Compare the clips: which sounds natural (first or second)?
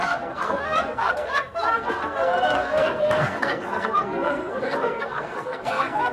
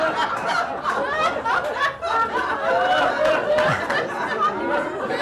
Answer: second